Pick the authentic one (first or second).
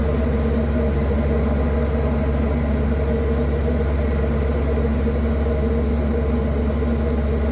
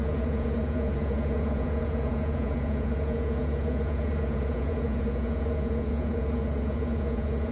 first